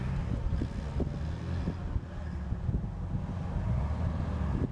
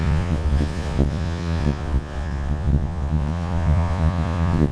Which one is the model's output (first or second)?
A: second